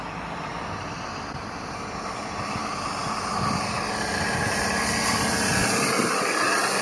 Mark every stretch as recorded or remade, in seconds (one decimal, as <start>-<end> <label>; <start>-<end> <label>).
0.0-6.8 recorded